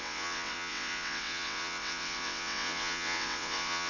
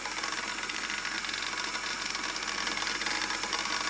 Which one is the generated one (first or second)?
first